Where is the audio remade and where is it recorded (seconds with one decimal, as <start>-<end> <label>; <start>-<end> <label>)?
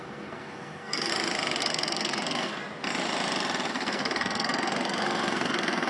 0.0-1.1 remade; 1.1-1.6 recorded; 1.6-2.6 remade; 2.6-3.7 recorded; 3.7-5.9 remade